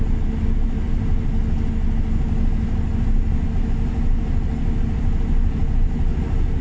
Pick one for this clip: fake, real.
real